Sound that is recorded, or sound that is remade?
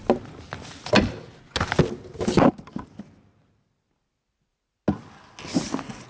recorded